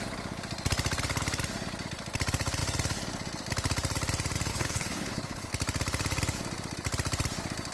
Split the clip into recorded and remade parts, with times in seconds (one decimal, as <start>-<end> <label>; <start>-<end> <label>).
0.0-4.5 recorded; 4.5-5.5 remade; 5.5-7.7 recorded